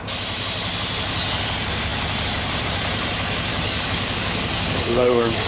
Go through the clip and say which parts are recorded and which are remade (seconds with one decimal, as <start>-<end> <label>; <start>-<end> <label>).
0.0-3.5 recorded; 3.5-5.5 remade